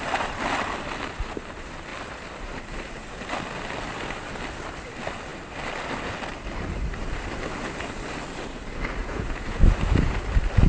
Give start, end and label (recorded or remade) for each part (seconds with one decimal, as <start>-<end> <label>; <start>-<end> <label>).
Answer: 0.0-9.0 recorded; 9.0-9.6 remade; 9.6-10.7 recorded